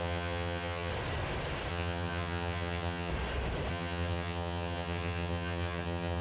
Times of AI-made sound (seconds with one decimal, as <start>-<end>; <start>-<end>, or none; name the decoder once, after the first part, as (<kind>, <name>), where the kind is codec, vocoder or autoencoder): 0.0-0.9 (vocoder, HiFi-GAN); 1.7-3.1; 3.7-6.2